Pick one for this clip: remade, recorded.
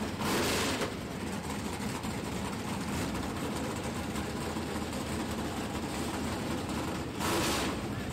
remade